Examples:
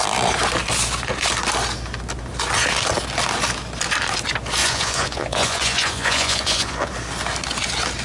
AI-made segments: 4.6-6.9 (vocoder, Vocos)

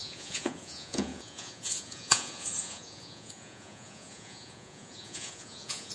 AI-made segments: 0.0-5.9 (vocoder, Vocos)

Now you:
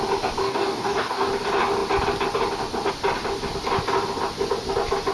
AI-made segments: 0.4-1.3 (codec, DAC)